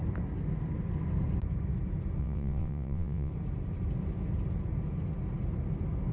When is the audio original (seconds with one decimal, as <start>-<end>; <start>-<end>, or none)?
0.0-2.2; 3.3-6.1